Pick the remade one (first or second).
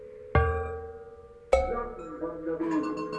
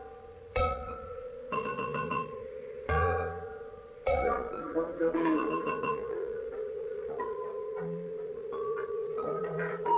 second